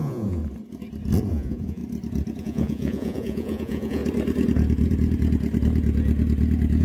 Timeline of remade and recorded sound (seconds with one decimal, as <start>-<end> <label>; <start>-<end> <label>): 0.0-0.4 remade; 0.4-1.3 recorded; 1.3-1.8 remade; 1.8-2.4 recorded; 2.4-4.0 remade; 4.0-6.8 recorded